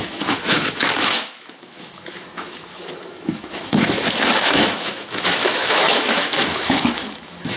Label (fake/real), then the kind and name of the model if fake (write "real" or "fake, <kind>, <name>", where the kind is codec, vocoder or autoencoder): fake, autoencoder, DAC-VAE